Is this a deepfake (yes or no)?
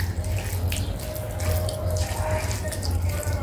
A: no